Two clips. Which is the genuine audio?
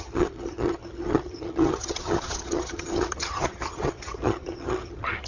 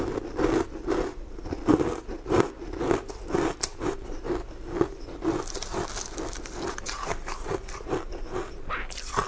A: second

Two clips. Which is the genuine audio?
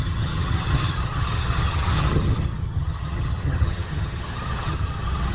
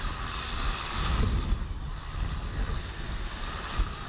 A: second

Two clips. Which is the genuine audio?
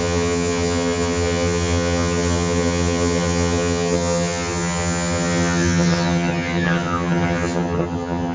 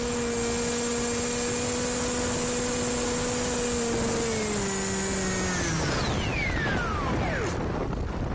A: second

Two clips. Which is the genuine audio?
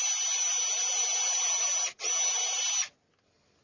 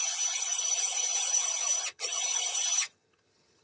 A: first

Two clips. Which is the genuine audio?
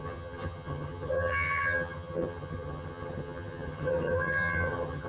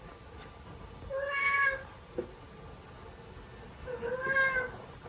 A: second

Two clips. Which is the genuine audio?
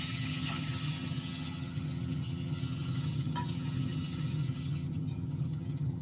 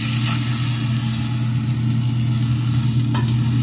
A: second